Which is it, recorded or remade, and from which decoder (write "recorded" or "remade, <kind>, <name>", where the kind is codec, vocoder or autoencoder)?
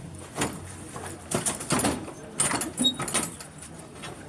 recorded